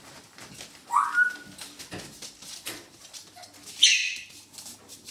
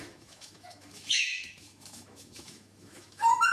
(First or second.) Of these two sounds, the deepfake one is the second